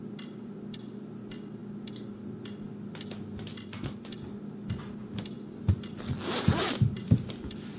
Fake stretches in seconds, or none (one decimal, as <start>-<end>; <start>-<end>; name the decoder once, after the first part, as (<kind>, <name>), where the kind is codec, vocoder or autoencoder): none